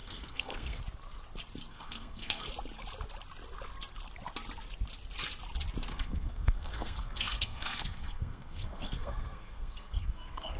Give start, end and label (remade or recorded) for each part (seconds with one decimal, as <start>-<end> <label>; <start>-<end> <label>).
0.0-0.8 remade; 0.8-1.7 recorded; 1.7-2.5 remade; 2.5-5.9 recorded; 5.9-10.6 remade

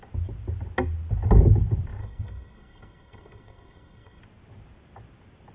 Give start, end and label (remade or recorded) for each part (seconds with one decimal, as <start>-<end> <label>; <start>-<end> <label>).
0.0-2.0 recorded; 2.0-4.2 remade; 4.2-5.5 recorded

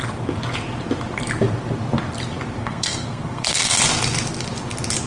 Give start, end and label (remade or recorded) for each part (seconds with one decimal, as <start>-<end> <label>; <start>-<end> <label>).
0.0-2.6 recorded; 2.6-3.8 remade; 3.8-5.1 recorded

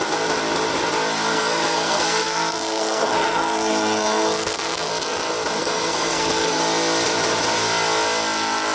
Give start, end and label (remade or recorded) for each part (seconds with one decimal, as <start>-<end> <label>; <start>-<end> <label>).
0.0-1.3 recorded; 1.3-4.9 remade; 4.9-5.6 recorded; 5.6-6.6 remade; 6.6-8.7 recorded

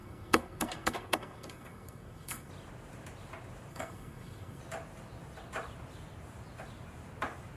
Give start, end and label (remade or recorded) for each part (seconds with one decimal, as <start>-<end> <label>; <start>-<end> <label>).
0.0-2.5 remade; 2.5-3.7 recorded; 3.7-4.6 remade; 4.6-7.6 recorded

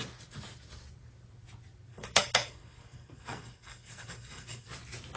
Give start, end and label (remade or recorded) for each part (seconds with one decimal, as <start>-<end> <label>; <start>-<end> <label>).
0.0-1.9 recorded; 1.9-4.7 remade; 4.7-5.2 recorded

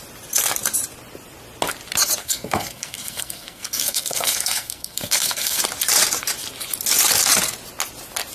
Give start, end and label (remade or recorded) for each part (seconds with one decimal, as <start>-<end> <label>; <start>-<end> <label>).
0.0-2.2 recorded; 2.2-5.6 remade; 5.6-8.3 recorded

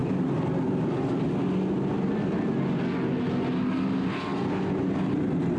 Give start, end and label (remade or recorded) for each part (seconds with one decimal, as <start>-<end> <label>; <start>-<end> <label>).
0.0-5.6 recorded